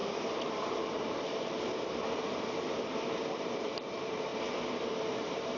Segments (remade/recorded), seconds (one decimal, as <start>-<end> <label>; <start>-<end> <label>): 0.0-4.3 remade; 4.3-4.9 recorded; 4.9-5.6 remade